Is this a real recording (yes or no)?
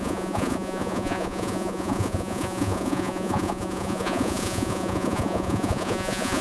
no